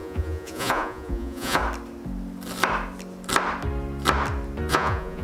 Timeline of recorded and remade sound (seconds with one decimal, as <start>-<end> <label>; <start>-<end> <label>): 0.0-1.6 remade; 1.6-4.7 recorded; 4.7-5.2 remade